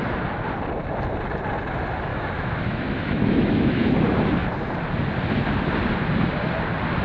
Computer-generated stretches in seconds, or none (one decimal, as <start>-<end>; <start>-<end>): 2.1-3.9